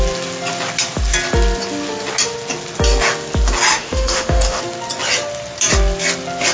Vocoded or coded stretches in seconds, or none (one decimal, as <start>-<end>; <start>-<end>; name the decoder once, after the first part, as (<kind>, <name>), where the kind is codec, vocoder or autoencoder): 3.7-4.6 (autoencoder, DAC-VAE)